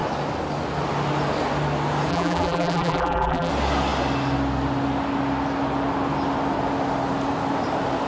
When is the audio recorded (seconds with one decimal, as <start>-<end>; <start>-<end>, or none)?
0.0-2.1; 3.5-8.1